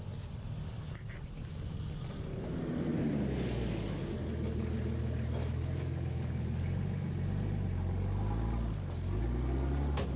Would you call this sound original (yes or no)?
yes